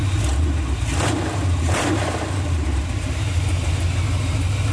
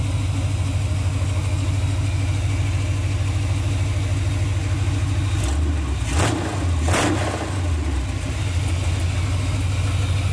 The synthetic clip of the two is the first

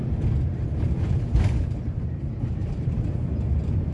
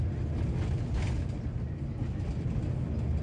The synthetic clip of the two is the first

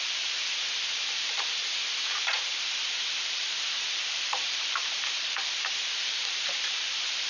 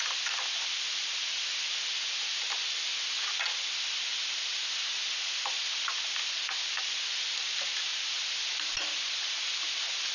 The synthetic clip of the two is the first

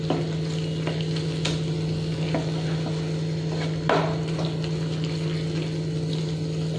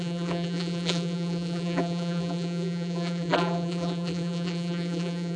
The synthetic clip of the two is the second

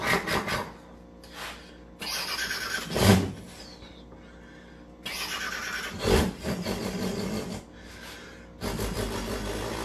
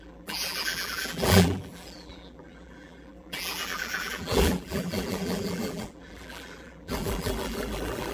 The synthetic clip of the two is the second